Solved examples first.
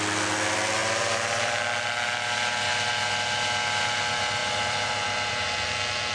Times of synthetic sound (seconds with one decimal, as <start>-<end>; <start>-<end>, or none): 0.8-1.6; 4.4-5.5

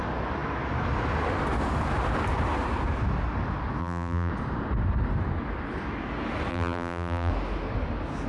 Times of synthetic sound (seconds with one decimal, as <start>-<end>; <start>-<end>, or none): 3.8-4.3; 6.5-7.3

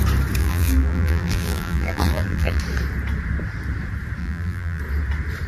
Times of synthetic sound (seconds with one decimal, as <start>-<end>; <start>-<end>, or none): 0.4-2.6; 4.2-4.8